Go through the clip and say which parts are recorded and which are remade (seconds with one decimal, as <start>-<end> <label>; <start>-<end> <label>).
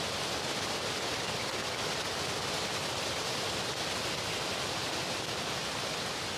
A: 0.0-6.4 recorded